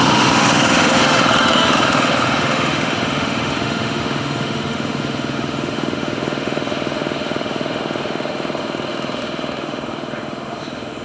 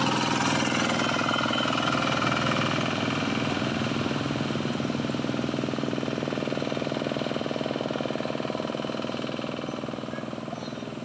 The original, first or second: second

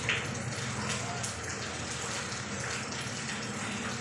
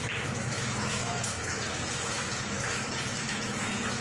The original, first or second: first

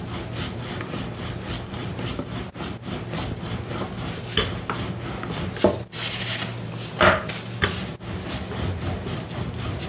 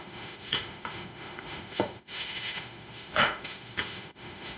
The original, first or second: first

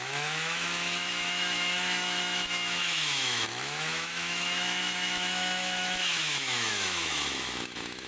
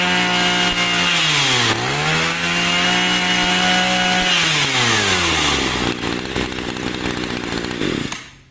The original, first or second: second